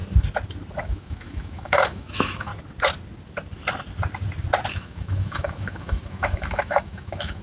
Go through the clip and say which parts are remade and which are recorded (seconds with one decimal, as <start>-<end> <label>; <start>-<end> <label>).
0.0-0.8 recorded; 0.8-2.5 remade; 2.5-4.7 recorded; 4.7-7.4 remade